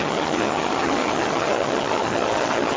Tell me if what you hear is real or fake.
fake